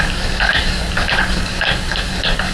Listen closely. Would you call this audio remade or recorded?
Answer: remade